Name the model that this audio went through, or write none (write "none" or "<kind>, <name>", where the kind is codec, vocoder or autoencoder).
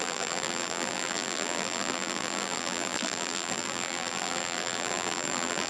vocoder, BigVGAN v2